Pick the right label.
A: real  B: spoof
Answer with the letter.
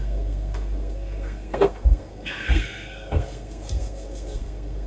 B